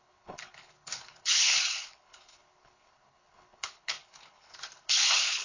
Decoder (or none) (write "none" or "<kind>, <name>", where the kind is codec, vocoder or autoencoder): codec, HILCodec